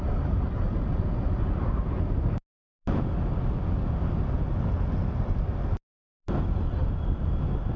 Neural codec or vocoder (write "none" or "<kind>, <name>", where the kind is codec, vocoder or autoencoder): none